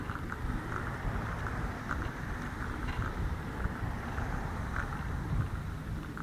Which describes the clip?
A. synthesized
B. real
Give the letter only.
B